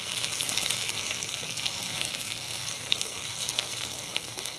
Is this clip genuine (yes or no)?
no